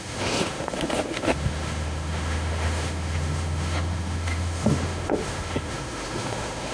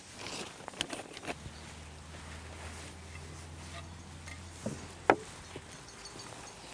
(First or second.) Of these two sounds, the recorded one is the second